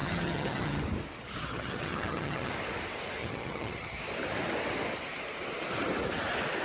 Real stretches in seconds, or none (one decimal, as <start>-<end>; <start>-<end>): 0.8-1.4; 2.5-3.2; 4.0-6.6